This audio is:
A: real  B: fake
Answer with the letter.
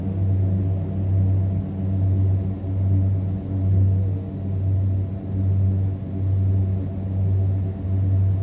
A